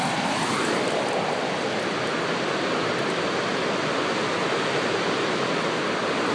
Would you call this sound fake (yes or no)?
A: no